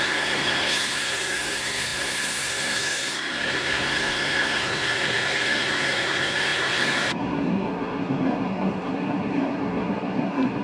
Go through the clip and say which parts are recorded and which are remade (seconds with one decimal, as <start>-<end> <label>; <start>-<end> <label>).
0.0-10.6 remade